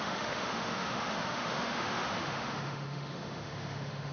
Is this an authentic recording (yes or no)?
no